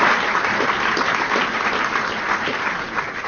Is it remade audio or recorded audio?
recorded